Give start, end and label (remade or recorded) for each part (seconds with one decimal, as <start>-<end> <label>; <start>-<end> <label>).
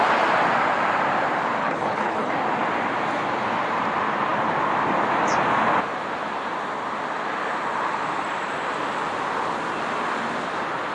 0.0-1.6 recorded; 1.6-2.3 remade; 2.3-10.9 recorded